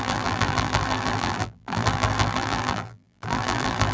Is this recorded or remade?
remade